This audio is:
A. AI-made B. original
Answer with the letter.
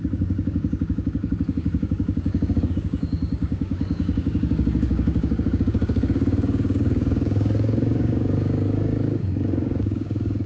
A